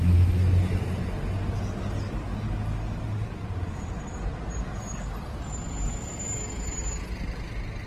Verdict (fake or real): real